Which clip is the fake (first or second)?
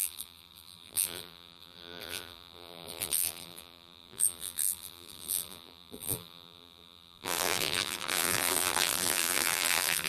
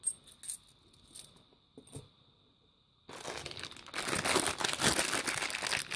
first